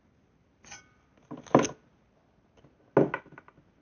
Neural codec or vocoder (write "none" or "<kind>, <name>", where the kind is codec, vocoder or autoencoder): none